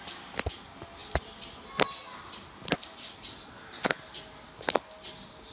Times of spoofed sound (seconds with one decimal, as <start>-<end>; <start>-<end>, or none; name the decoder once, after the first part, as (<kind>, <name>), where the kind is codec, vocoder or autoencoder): none